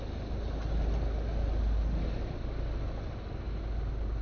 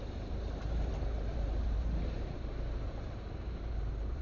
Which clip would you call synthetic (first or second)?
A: second